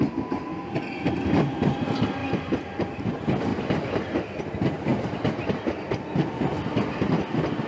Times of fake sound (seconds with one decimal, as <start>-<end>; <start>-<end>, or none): 2.2-3.1; 3.5-4.4